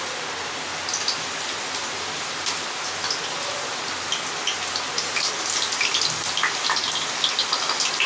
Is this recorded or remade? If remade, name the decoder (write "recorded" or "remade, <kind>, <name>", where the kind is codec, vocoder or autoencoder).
recorded